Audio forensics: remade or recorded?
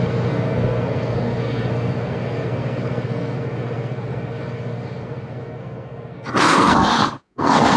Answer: remade